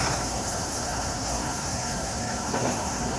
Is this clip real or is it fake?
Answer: fake